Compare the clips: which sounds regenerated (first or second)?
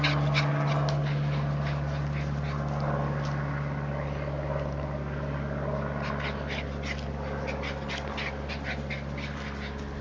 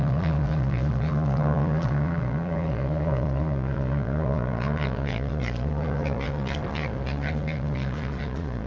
second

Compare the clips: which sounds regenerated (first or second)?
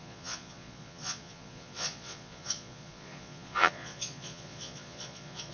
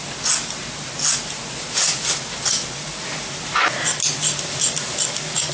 first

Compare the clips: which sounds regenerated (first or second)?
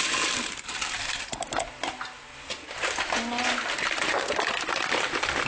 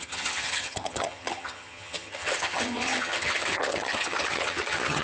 second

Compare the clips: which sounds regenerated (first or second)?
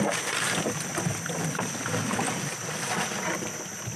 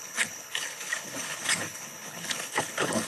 second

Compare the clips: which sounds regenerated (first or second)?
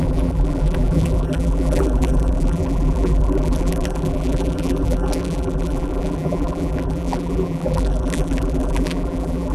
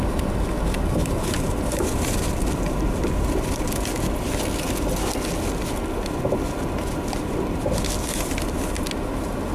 first